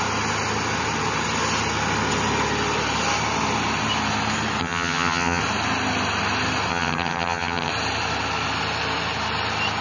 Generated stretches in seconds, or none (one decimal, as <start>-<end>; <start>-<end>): 4.6-5.4; 6.7-7.7